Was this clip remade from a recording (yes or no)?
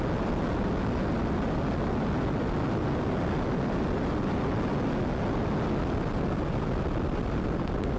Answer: no